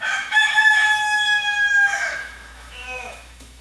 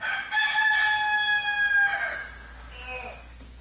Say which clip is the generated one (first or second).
first